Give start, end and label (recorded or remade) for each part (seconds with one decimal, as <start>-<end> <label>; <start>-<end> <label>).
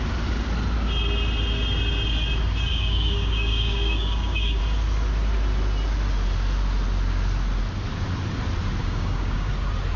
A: 0.0-2.7 recorded; 2.7-4.6 remade; 4.6-8.8 recorded; 8.8-9.5 remade; 9.5-10.0 recorded